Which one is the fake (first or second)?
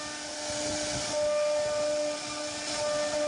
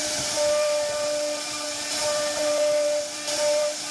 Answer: second